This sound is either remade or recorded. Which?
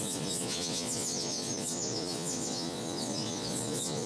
remade